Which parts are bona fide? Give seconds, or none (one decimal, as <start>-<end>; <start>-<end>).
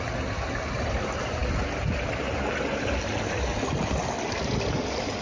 0.0-5.2